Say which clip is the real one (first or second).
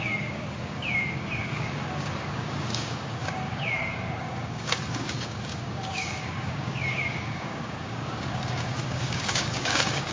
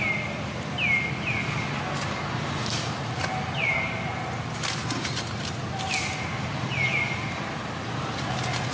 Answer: second